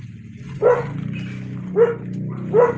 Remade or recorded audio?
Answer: recorded